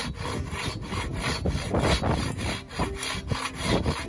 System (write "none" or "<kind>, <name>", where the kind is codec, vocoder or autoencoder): none